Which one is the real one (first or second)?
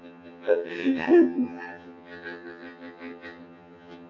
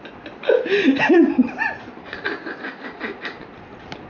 second